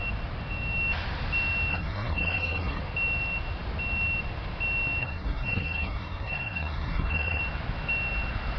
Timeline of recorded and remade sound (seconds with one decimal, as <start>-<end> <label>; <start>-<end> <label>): 0.0-1.7 recorded; 1.7-2.8 remade; 2.8-5.0 recorded; 5.0-7.4 remade; 7.4-8.6 recorded